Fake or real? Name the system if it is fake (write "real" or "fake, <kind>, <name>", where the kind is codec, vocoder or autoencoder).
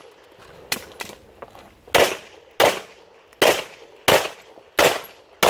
real